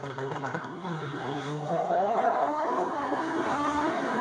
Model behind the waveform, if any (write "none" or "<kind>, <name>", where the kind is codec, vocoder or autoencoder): codec, SNAC